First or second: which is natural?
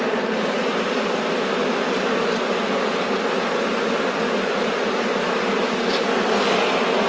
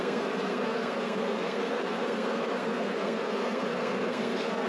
first